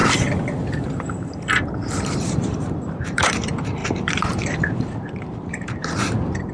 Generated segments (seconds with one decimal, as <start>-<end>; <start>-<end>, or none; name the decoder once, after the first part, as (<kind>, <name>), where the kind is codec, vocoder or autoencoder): 1.5-6.5 (vocoder, BigVGAN v2)